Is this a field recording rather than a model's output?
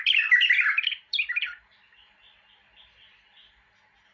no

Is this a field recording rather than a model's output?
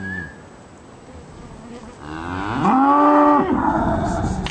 yes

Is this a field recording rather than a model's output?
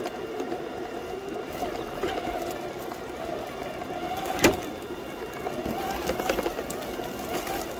yes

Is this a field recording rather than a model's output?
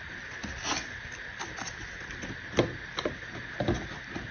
yes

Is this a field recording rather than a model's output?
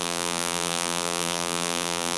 no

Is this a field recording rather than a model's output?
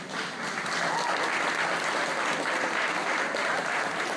yes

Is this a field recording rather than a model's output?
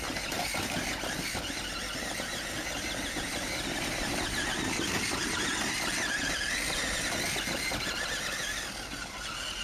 yes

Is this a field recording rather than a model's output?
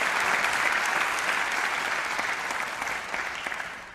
yes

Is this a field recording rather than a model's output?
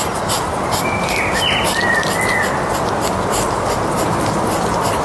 yes